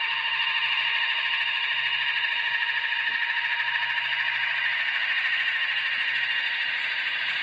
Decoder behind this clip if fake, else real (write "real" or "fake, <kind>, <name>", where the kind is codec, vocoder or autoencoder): real